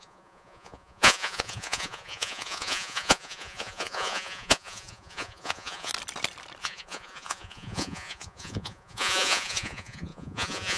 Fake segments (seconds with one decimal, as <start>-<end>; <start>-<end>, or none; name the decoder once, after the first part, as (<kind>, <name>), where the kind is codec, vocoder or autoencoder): 0.0-5.9 (vocoder, Vocos); 6.6-10.8